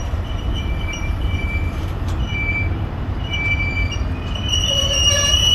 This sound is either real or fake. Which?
fake